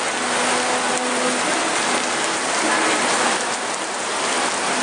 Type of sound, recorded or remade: recorded